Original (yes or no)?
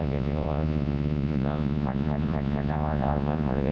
no